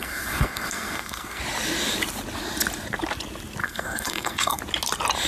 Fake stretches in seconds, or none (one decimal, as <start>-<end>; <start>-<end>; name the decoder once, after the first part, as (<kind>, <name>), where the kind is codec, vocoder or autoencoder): 0.0-1.4 (codec, SNAC); 3.6-4.6